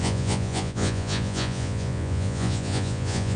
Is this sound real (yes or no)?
no